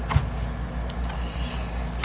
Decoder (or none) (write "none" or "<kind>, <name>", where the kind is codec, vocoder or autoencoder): none